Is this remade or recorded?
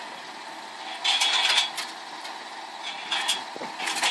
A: recorded